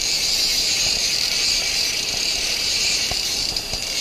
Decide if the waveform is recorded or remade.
remade